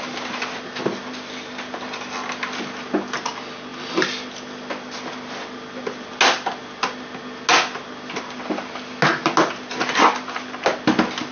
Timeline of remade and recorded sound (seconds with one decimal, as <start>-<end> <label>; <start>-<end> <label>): 0.0-11.3 recorded